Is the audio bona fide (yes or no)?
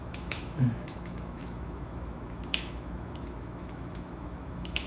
no